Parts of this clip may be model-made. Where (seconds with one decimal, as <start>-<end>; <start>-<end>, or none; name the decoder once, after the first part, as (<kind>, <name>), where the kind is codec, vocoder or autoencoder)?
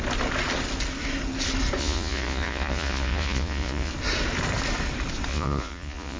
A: 1.8-3.9 (vocoder, Vocos); 5.3-6.2